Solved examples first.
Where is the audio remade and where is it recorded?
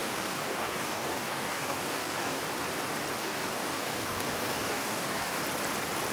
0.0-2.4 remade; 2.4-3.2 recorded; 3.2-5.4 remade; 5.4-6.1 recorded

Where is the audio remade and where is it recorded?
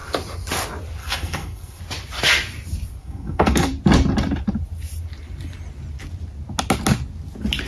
0.0-1.0 recorded; 1.0-1.8 remade; 1.8-3.0 recorded; 3.0-3.7 remade; 3.7-7.7 recorded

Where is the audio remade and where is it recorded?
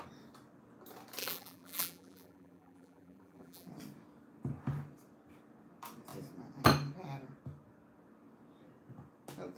0.0-1.2 recorded; 1.2-3.7 remade; 3.7-9.6 recorded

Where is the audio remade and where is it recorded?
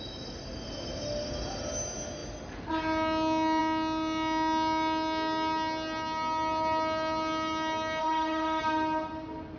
0.0-8.0 recorded; 8.0-8.6 remade; 8.6-9.6 recorded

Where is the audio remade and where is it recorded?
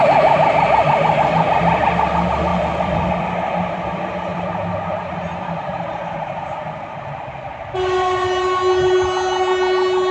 0.0-2.5 recorded; 2.5-3.2 remade; 3.2-10.1 recorded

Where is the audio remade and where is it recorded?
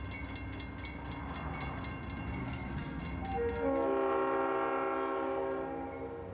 0.0-2.4 recorded; 2.4-3.0 remade; 3.0-6.3 recorded